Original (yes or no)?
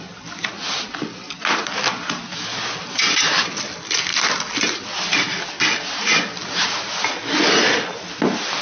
yes